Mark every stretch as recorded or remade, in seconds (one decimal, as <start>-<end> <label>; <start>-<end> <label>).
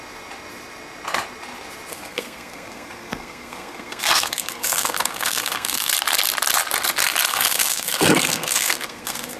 0.0-1.9 recorded; 1.9-5.9 remade; 5.9-7.3 recorded; 7.3-9.4 remade